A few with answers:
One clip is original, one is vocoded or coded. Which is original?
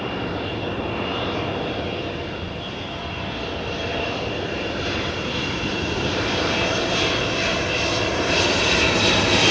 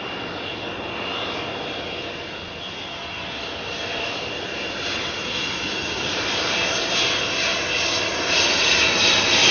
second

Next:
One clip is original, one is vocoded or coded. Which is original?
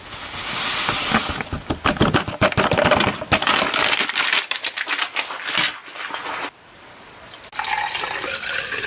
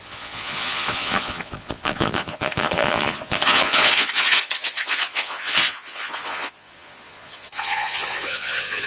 first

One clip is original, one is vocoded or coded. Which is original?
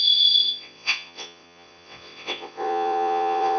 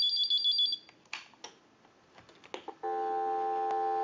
second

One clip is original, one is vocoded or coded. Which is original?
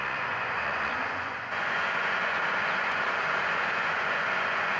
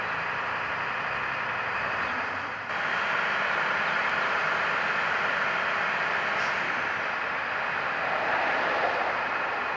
second